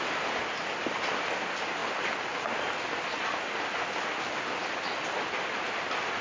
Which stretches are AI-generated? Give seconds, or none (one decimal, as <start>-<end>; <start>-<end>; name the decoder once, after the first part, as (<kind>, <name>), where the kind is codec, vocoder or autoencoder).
none